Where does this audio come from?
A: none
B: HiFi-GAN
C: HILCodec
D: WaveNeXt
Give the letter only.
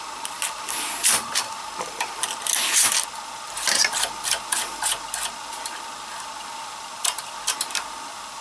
A